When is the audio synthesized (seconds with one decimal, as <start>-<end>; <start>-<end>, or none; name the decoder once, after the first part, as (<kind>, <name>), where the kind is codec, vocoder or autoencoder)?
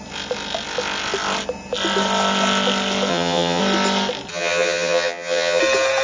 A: 3.1-3.6 (vocoder, HiFi-GAN); 4.3-5.6